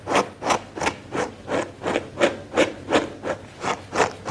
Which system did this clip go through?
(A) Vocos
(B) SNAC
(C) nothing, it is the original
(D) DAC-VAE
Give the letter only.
C